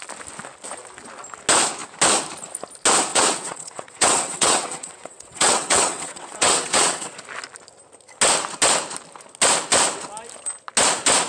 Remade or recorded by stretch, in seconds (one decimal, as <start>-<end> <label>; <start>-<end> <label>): 0.0-3.1 recorded; 3.1-7.2 remade; 7.2-11.3 recorded